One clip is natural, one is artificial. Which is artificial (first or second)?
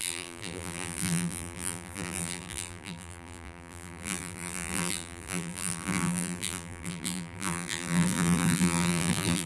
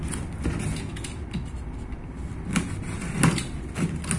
first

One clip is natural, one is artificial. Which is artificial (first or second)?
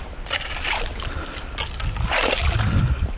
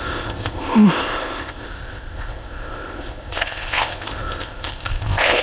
second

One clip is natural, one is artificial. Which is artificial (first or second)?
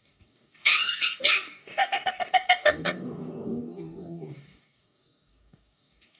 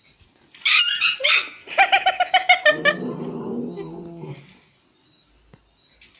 first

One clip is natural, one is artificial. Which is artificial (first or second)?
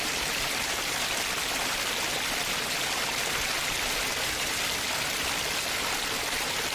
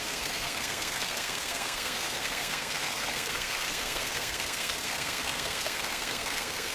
second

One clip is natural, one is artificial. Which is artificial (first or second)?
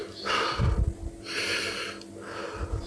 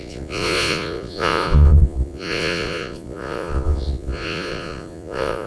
second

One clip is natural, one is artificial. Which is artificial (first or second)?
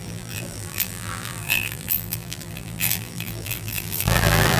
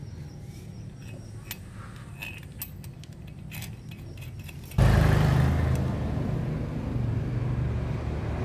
first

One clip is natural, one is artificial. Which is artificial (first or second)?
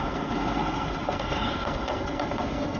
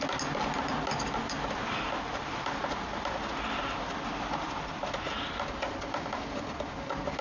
first